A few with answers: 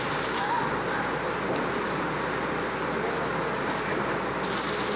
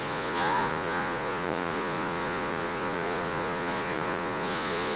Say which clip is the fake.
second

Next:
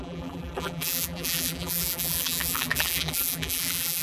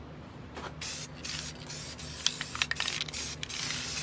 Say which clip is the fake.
first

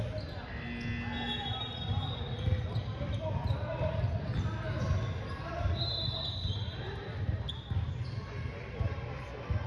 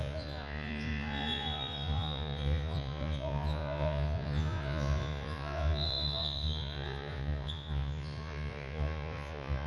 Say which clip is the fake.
second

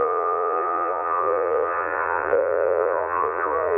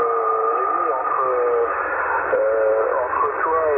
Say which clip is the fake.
first